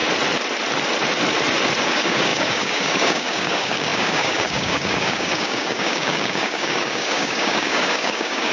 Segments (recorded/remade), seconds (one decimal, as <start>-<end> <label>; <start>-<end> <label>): 0.0-1.8 recorded; 1.8-8.5 remade